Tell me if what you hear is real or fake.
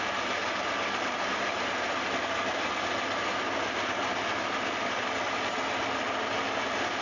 real